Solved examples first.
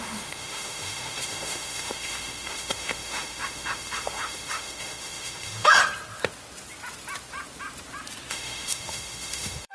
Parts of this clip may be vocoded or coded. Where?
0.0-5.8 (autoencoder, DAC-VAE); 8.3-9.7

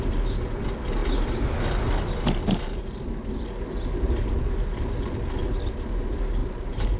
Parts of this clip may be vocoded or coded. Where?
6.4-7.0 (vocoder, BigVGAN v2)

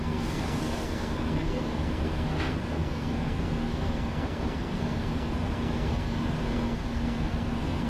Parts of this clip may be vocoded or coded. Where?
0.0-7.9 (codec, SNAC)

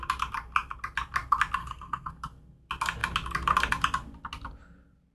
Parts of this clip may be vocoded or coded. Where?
1.6-2.1 (codec, SNAC)